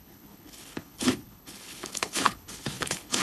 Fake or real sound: fake